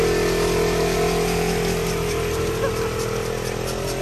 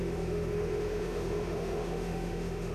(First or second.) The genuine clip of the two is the first